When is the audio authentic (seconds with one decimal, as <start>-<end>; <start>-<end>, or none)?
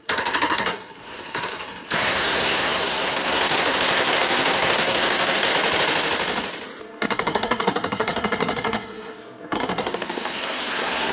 5.5-6.8